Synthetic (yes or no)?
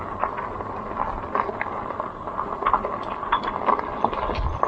no